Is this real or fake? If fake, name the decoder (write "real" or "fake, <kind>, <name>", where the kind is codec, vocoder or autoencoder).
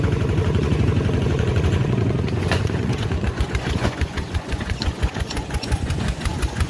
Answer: fake, vocoder, Vocos